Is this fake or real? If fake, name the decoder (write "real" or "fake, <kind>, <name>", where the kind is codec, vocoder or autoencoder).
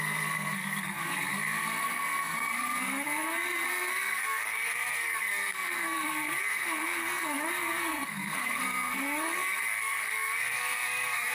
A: fake, codec, SNAC